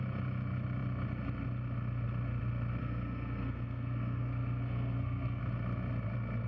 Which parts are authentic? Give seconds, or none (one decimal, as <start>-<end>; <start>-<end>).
0.0-2.8; 5.4-6.5